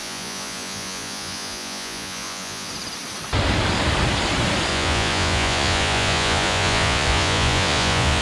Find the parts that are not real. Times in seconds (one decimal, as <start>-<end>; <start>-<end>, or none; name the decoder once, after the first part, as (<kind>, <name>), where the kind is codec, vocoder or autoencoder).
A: 0.0-2.7 (vocoder, Vocos); 4.7-8.2